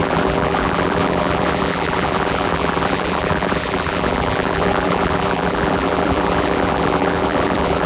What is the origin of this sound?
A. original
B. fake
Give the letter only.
B